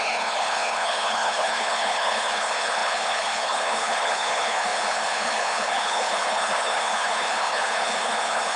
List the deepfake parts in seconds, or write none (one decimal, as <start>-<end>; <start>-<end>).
0.0-8.6

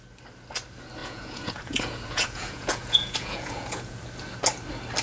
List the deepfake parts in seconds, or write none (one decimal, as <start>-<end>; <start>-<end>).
1.0-4.0

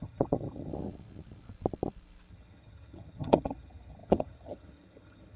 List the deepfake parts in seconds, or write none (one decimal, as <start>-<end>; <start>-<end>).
0.0-0.7; 2.3-5.4

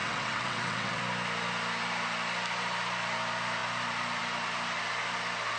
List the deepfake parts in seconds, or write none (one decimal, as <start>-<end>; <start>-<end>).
0.0-1.0

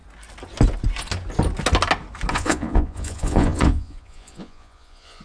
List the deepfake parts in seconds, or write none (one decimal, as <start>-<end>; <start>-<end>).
2.3-5.2

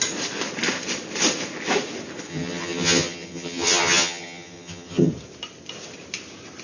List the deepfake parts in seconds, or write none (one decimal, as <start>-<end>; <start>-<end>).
2.3-5.1

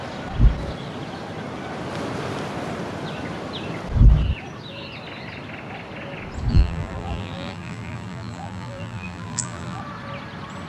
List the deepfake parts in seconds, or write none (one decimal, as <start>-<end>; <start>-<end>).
6.5-9.8

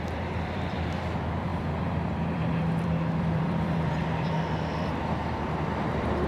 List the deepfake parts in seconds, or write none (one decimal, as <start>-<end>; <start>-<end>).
0.0-6.3